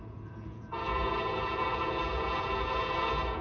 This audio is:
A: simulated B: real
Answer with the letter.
A